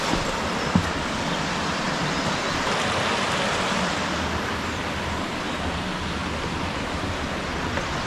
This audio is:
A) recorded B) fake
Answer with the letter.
A